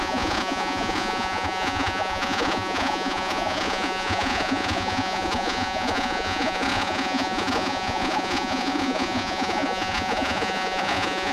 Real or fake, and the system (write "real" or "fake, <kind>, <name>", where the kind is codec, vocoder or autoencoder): fake, vocoder, Vocos